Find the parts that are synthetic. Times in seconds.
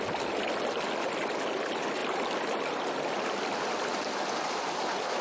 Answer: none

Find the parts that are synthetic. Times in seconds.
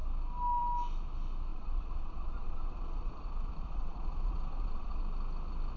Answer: 1.5-5.0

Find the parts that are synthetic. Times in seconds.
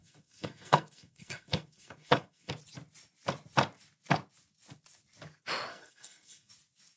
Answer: 0.0-2.5; 5.7-6.5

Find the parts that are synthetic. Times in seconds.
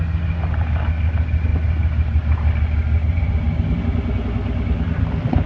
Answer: none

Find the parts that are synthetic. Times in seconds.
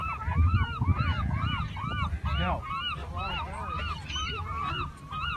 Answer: none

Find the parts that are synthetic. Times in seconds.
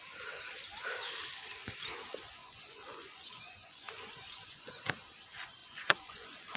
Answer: 2.4-4.8; 5.6-6.6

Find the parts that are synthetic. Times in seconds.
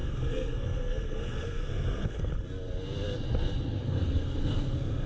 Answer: 0.0-2.3; 3.8-5.1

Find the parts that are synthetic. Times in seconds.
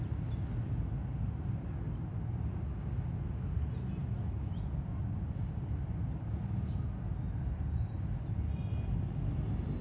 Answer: 4.0-4.5